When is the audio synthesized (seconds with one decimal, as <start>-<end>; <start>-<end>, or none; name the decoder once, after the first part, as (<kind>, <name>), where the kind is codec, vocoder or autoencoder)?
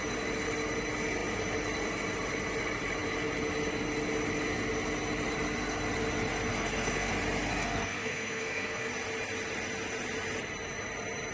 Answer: 6.5-7.1 (codec, SNAC); 7.6-8.9